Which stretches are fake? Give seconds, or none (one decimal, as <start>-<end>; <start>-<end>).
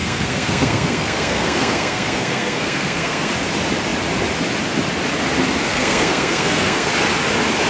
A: 0.0-3.3; 5.7-6.9